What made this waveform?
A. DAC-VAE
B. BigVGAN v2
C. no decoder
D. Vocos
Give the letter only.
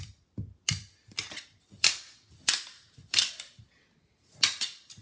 C